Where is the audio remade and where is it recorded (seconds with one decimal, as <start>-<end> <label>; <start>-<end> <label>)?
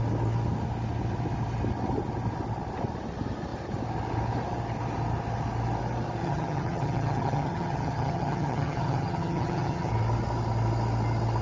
0.0-6.2 recorded; 6.2-9.9 remade; 9.9-11.4 recorded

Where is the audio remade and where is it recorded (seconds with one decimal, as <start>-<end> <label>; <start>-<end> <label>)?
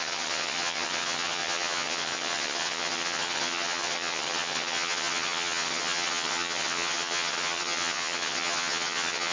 0.0-9.3 remade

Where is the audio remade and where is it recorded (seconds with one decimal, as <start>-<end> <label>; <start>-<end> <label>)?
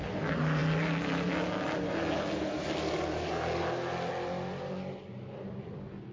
0.0-6.1 recorded